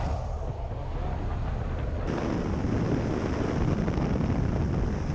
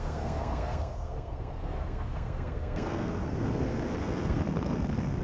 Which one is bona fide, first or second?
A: first